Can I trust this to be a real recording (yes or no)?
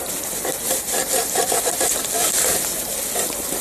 yes